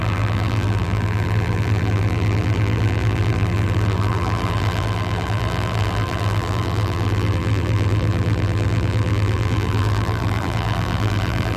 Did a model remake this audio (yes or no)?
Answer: yes